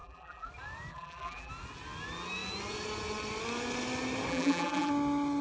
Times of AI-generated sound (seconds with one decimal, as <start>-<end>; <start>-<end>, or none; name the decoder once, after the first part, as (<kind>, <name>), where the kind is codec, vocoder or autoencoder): 0.0-0.5 (vocoder, BigVGAN v2); 0.9-1.5; 4.3-4.9